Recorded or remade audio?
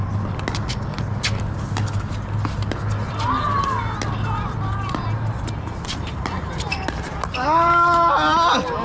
recorded